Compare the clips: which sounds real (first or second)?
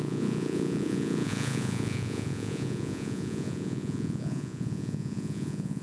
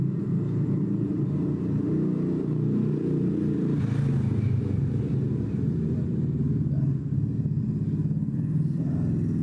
second